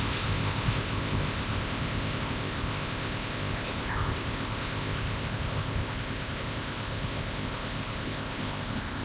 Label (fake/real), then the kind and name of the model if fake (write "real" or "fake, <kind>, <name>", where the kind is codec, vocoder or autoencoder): fake, codec, ZipCodec